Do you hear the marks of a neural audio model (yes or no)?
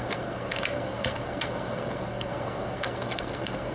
yes